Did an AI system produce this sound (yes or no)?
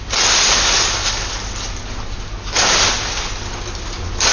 no